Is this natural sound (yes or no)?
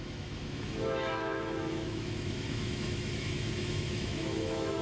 no